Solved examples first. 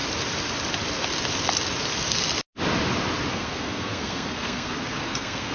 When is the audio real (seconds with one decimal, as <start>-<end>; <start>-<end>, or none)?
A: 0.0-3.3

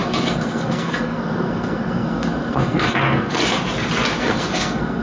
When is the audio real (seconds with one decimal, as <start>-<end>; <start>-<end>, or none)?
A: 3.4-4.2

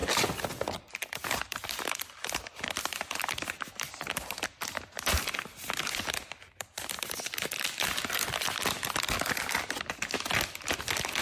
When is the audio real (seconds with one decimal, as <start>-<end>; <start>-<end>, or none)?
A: 0.0-11.2

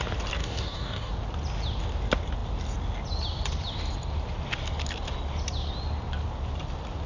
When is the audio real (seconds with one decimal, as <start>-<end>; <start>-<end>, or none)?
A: 0.0-0.4; 1.1-7.1

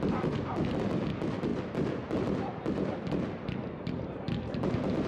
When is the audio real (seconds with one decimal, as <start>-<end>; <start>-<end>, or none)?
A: none

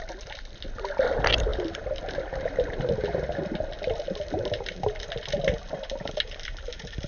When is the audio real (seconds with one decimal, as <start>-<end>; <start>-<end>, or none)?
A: 0.0-7.1

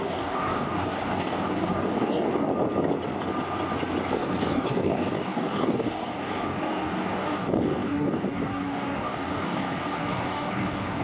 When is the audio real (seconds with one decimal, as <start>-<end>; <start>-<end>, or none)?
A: 2.5-4.1